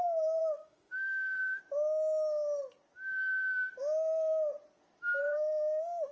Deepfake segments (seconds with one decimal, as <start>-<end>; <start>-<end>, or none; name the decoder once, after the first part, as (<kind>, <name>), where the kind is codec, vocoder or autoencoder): 0.4-1.6 (autoencoder, DAC-VAE); 5.2-6.1